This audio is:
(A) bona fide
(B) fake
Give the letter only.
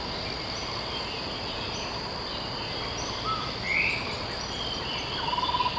A